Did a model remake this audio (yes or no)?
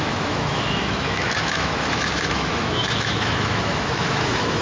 yes